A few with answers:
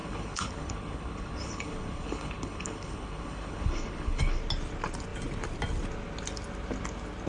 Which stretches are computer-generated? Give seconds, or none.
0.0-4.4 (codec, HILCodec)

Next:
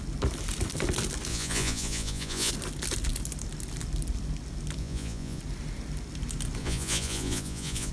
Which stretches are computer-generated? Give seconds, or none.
1.3-2.5 (vocoder, Vocos); 4.8-5.4; 6.6-7.9

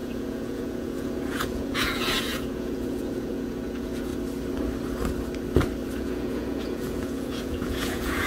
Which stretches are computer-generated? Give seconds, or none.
0.0-4.1 (vocoder, Vocos); 6.0-8.3

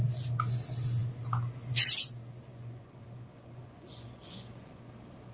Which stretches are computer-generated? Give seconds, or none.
2.5-4.8 (vocoder, Vocos)